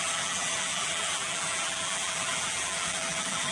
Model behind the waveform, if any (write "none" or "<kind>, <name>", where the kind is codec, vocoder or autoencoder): vocoder, BigVGAN v2